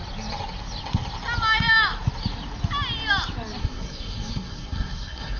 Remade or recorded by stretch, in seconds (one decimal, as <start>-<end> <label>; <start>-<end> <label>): 0.0-3.6 recorded; 3.6-5.4 remade